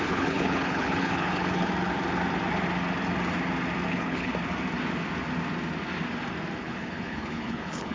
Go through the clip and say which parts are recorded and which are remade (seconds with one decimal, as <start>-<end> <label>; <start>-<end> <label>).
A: 0.0-1.7 remade; 1.7-3.9 recorded; 3.9-4.3 remade; 4.3-6.6 recorded; 6.6-7.9 remade